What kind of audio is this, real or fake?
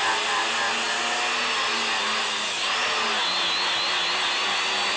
real